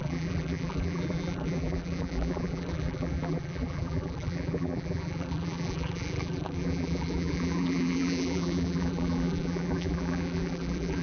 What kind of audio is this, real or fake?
fake